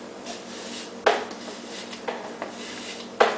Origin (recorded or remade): recorded